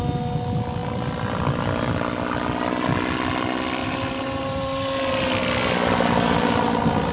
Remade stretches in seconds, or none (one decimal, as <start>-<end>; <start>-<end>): 3.8-5.3